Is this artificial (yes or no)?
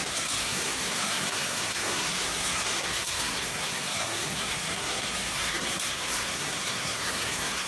yes